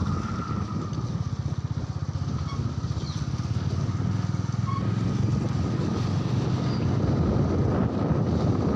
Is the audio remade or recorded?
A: recorded